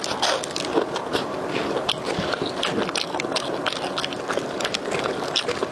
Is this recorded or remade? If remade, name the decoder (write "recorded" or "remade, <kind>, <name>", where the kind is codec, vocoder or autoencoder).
recorded